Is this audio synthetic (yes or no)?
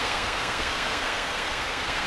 yes